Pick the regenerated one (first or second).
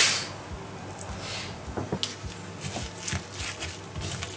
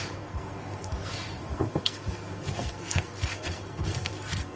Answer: second